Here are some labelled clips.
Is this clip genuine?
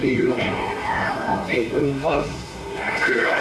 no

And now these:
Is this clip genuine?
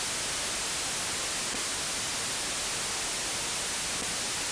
yes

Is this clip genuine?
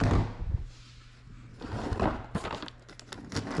yes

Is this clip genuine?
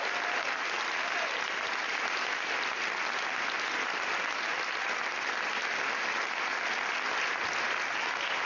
yes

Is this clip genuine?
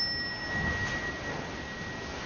yes